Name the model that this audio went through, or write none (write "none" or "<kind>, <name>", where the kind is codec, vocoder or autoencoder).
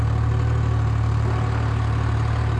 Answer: none